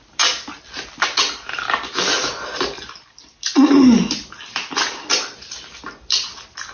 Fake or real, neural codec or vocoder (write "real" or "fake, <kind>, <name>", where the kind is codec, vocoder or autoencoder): real